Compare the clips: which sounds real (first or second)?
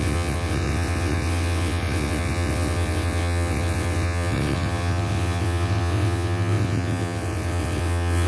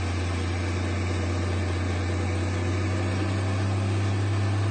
second